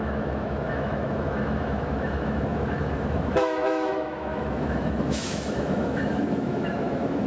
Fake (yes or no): yes